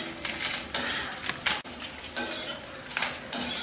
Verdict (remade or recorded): recorded